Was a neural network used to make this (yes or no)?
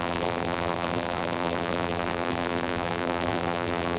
yes